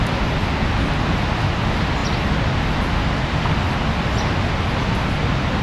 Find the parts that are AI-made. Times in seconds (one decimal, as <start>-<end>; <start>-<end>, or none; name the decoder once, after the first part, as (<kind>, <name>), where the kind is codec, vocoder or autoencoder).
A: none